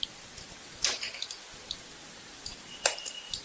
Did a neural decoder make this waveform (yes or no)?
no